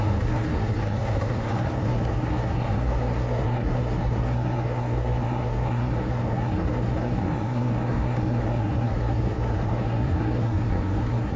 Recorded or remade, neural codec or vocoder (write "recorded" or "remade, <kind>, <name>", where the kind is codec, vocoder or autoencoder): remade, codec, SNAC